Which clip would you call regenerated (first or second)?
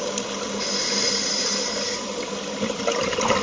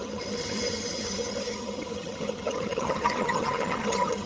second